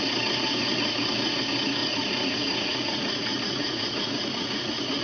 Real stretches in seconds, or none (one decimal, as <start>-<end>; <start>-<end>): 0.0-0.6; 1.4-1.8